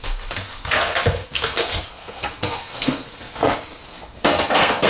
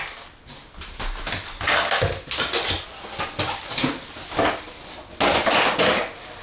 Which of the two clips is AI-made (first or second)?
first